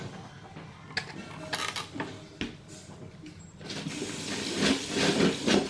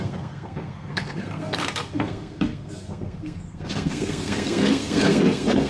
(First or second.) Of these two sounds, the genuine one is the first